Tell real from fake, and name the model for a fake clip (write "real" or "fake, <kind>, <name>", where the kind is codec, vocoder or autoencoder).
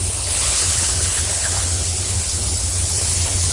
fake, codec, HILCodec